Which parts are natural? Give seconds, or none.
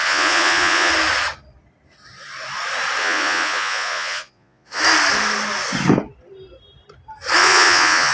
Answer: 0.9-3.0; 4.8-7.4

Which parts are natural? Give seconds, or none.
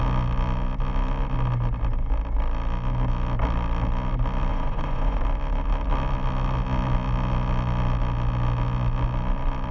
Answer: 0.0-4.5; 5.2-9.7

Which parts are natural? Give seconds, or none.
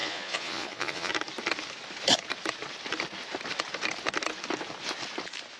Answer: 1.1-5.6